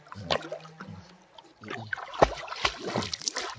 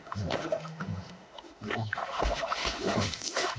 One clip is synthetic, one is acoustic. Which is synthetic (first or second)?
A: second